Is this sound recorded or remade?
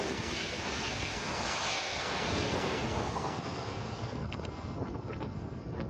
remade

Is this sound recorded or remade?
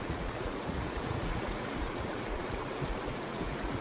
remade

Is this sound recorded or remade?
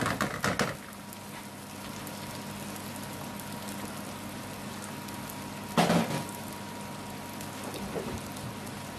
recorded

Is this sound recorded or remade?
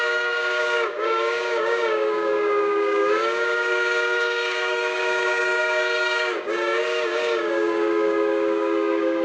remade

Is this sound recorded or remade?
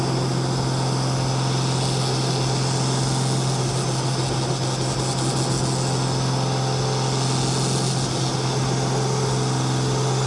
recorded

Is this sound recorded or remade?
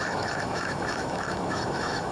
remade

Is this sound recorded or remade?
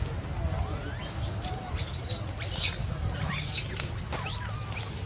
recorded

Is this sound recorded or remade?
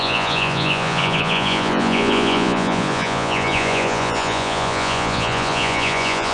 remade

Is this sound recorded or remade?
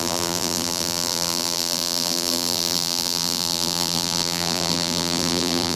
remade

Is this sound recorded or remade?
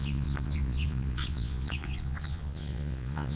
remade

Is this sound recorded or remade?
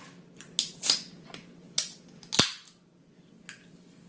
recorded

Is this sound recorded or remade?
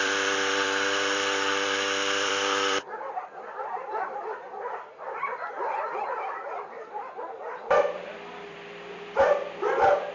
remade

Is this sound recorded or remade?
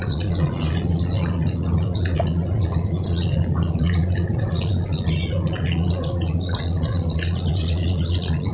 remade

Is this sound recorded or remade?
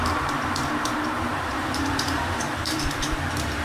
remade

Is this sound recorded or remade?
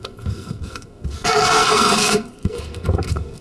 remade